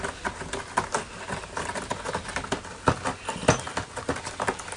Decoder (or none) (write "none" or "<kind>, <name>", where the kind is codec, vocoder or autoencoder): none